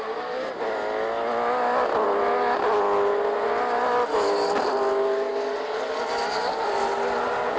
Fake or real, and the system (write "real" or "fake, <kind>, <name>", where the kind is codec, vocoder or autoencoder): real